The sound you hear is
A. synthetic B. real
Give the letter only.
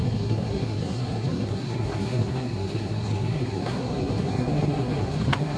A